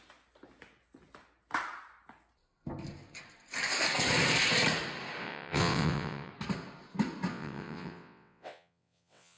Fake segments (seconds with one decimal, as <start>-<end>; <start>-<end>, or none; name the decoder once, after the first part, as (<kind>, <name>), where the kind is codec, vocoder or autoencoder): 5.2-6.3 (vocoder, WaveNeXt); 7.3-9.4